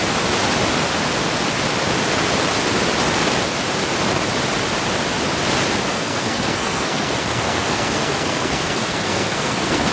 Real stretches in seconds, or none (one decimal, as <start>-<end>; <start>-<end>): 0.0-5.9